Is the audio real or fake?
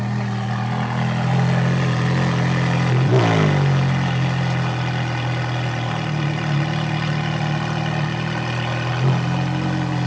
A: real